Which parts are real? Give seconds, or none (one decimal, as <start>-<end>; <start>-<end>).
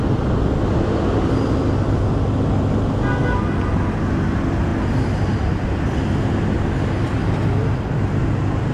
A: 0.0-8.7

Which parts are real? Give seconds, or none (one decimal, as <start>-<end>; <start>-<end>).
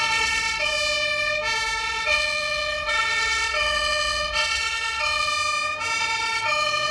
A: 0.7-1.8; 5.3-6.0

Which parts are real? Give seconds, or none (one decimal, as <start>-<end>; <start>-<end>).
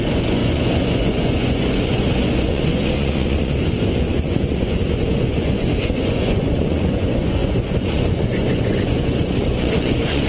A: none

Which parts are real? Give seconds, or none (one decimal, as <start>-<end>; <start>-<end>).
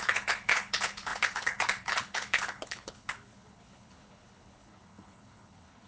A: none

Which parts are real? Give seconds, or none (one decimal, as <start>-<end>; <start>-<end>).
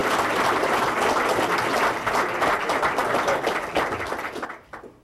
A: 0.0-5.0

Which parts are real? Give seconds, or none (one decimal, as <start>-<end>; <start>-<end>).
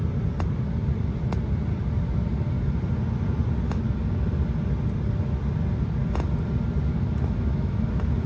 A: 0.0-6.9; 7.9-8.3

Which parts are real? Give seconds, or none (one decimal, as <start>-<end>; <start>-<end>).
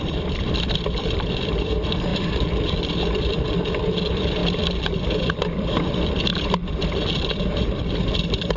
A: 6.3-7.8